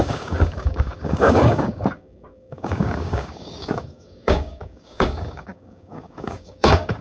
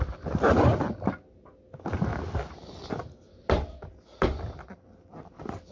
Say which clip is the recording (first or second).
second